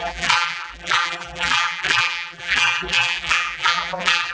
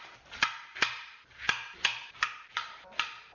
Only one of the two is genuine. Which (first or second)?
second